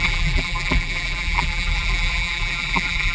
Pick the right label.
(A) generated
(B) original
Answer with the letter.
A